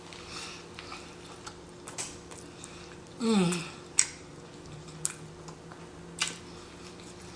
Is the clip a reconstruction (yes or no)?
no